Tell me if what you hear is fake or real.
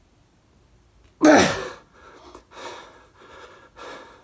real